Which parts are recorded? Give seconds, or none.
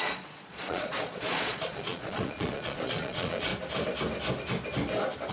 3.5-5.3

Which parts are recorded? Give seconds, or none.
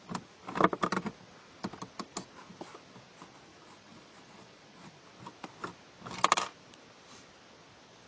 0.0-3.5; 5.0-8.1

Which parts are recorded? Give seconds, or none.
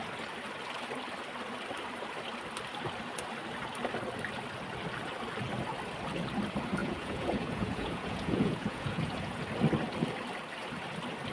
0.0-6.8; 9.4-11.3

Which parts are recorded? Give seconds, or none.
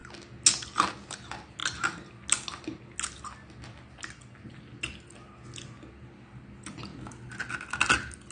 0.0-8.3